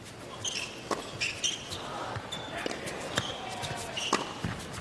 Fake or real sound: real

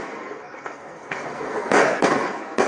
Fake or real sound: fake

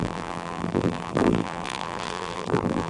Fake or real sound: fake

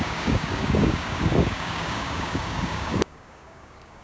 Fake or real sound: fake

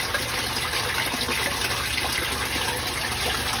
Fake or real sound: real